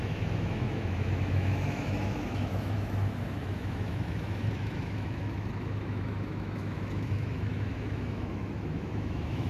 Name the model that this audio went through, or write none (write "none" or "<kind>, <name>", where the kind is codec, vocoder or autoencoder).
autoencoder, DAC-VAE